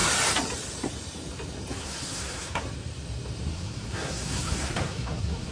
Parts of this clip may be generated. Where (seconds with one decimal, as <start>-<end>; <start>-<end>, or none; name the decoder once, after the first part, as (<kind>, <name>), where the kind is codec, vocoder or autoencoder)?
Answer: 1.8-2.6 (codec, SNAC); 3.5-5.5